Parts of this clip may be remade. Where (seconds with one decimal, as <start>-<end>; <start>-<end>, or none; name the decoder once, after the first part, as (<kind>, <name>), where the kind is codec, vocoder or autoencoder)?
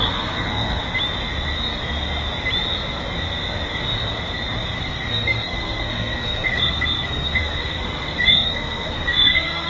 0.0-0.8 (codec, SNAC); 4.8-9.7